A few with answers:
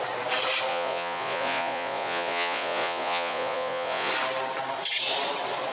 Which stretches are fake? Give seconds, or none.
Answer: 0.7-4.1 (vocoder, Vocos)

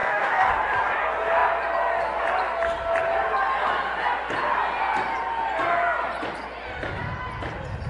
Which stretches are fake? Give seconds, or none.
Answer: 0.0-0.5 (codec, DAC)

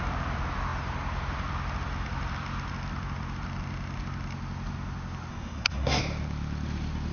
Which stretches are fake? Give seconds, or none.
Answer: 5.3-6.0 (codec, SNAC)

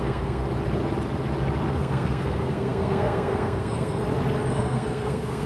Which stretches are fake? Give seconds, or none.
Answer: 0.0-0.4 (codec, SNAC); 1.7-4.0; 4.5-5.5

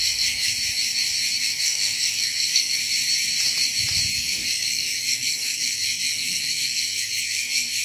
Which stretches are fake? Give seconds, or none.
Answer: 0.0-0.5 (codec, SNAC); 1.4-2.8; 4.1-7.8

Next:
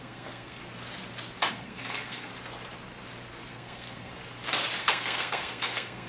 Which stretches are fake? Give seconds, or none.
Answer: 0.0-0.6 (codec, SNAC); 1.5-2.3; 3.5-4.1; 4.8-6.1